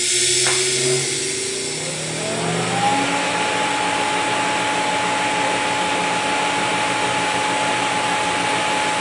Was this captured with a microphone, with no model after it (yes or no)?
yes